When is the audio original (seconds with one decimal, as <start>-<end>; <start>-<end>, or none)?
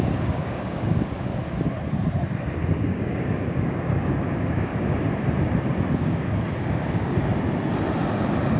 1.3-2.6; 4.7-5.9; 7.3-8.6